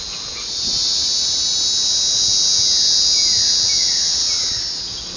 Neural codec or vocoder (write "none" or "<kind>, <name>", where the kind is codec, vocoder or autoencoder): none